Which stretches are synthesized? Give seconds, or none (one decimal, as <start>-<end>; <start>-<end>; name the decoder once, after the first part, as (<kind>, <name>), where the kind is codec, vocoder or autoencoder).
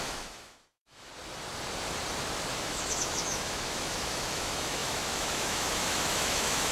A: 0.0-1.1 (autoencoder, DAC-VAE); 2.5-6.7